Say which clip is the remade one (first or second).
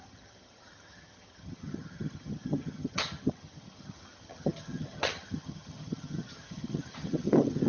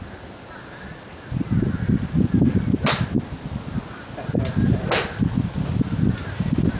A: first